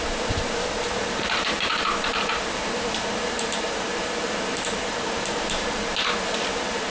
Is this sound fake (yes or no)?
yes